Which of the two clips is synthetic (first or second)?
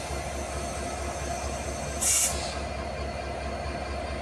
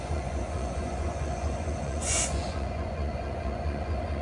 second